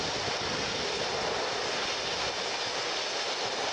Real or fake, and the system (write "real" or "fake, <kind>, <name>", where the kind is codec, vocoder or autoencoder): real